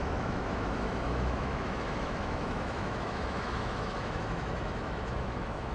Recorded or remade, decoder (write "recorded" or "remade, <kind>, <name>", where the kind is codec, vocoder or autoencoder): remade, autoencoder, DAC-VAE